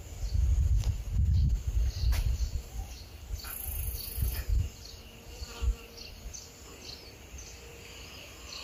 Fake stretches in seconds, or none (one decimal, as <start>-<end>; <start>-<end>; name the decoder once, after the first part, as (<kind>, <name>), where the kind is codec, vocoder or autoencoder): 0.6-2.9 (vocoder, BigVGAN v2); 7.7-8.2